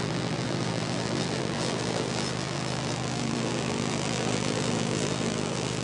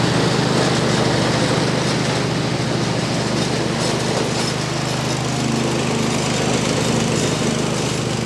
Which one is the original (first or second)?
second